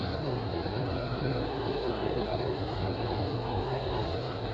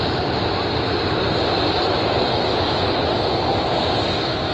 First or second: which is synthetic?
first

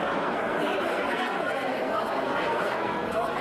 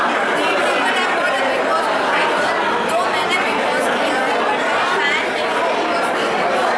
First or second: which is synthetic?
first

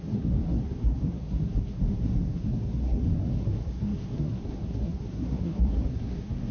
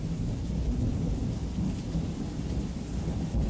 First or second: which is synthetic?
first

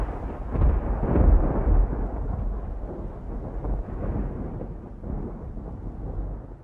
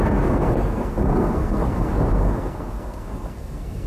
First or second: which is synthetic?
second